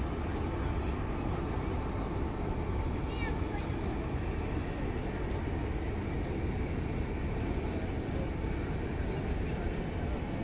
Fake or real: real